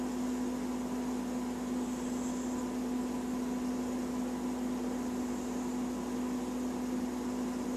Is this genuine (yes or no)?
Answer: yes